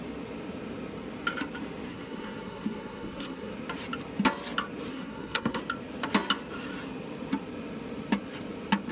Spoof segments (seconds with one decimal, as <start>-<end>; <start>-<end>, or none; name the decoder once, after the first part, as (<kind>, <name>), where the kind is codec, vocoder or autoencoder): 1.9-3.5 (codec, SNAC); 4.9-5.6